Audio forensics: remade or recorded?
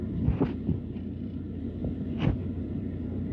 remade